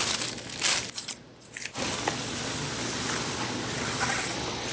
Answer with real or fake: real